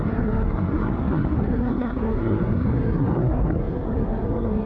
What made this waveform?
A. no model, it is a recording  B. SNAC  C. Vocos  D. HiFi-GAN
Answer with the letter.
B